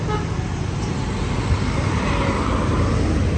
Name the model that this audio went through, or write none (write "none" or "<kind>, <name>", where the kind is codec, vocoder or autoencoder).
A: none